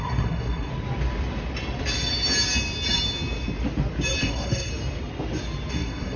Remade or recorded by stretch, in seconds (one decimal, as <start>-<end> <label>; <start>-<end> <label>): 0.0-0.7 remade; 0.7-4.2 recorded; 4.2-4.7 remade; 4.7-5.7 recorded; 5.7-6.2 remade